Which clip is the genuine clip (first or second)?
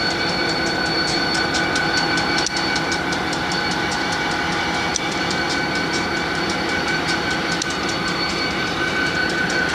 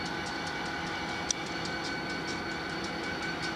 second